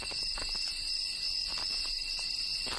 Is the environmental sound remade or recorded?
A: recorded